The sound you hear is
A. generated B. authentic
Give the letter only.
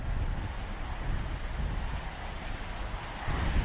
B